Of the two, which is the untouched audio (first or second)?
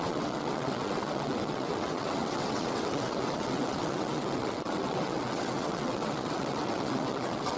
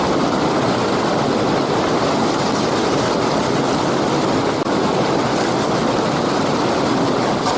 second